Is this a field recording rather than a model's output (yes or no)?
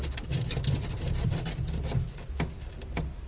yes